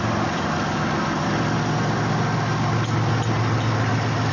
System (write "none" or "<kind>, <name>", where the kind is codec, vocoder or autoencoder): none